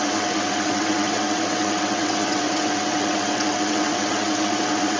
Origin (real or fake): fake